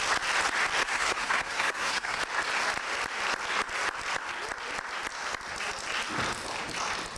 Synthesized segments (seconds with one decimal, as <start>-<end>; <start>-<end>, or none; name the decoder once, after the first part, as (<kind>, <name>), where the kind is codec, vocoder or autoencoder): 0.8-2.2 (codec, SNAC)